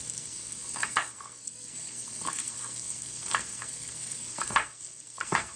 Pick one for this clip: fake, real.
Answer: fake